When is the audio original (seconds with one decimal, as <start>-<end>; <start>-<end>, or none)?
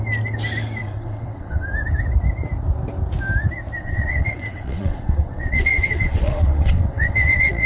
0.0-0.8; 1.7-3.8